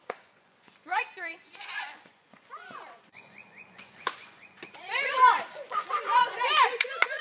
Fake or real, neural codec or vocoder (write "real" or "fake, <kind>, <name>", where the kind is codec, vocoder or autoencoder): fake, vocoder, Vocos